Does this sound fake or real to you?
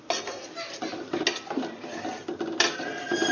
real